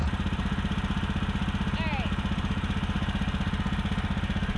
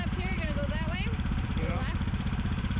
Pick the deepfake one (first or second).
second